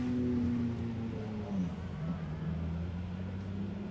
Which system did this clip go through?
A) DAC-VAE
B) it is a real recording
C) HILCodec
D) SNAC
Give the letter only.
B